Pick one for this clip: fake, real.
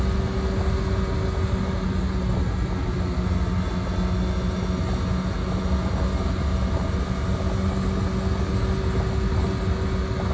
real